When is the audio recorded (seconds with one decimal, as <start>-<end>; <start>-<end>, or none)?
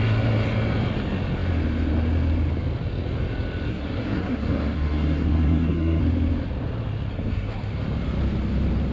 0.0-3.7; 6.0-7.1; 7.7-8.9